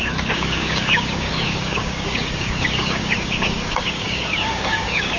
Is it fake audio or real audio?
fake